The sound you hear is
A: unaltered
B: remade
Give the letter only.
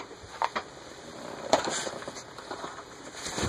B